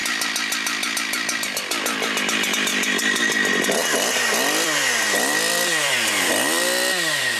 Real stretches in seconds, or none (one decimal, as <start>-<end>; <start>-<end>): 2.7-3.6; 4.8-5.5